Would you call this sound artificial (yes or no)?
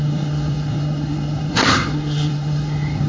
yes